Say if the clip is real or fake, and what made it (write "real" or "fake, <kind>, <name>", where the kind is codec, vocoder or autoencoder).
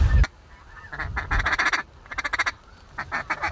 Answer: real